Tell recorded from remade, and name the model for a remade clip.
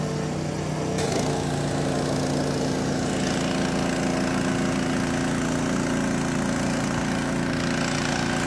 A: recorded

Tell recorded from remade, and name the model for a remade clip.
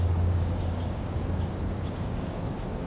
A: remade, codec, DAC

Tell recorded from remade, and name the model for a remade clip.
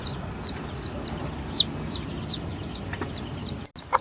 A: recorded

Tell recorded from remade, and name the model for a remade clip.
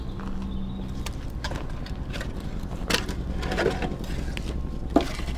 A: recorded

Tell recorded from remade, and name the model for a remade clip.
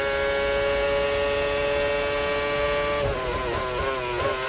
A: recorded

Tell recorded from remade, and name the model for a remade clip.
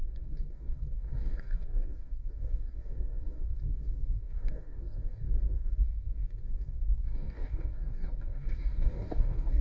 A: remade, codec, DAC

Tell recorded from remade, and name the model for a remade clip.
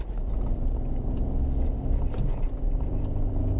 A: recorded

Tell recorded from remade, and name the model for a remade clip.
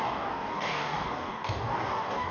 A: remade, codec, DAC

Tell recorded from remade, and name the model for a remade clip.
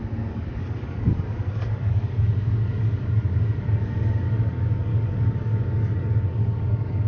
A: remade, codec, DAC